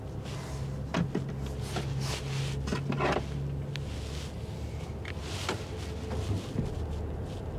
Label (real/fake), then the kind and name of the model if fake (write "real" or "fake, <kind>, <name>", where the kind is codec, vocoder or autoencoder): real